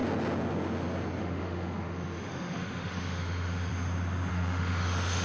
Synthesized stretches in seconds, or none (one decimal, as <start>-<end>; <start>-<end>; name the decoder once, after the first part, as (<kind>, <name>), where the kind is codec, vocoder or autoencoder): 1.2-3.7 (autoencoder, DAC-VAE); 4.3-5.2